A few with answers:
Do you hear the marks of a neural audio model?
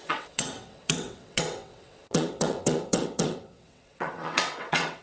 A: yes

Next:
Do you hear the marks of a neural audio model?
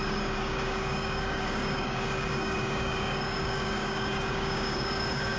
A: yes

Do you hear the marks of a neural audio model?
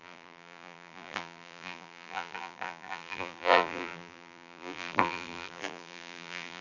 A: yes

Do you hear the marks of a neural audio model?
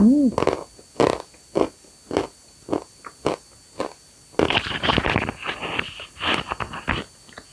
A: no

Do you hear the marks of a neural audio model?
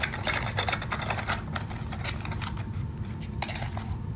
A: no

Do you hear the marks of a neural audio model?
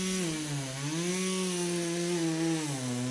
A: no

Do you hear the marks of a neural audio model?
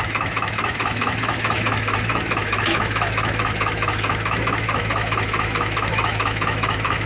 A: yes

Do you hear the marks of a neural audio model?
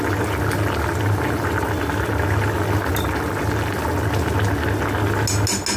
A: no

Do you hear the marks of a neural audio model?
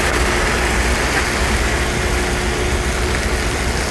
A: no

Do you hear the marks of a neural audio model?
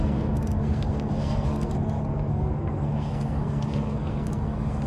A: yes